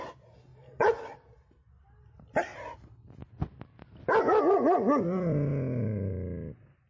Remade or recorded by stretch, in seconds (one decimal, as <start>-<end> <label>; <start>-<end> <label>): 0.0-6.9 recorded